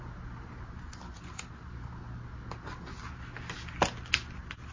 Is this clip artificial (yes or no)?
no